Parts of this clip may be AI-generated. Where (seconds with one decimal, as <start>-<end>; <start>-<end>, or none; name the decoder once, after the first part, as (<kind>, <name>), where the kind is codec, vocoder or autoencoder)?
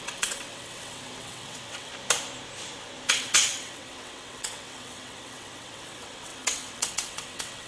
0.0-1.9 (vocoder, WaveNeXt); 3.1-7.7